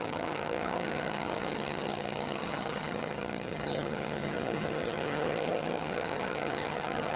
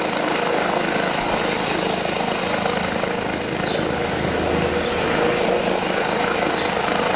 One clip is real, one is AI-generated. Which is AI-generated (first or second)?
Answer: first